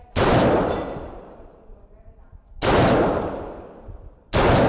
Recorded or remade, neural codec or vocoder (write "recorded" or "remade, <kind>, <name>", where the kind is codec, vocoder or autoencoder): recorded